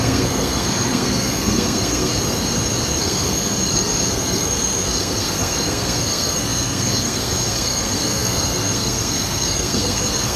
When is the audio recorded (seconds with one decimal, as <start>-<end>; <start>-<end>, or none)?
2.1-3.0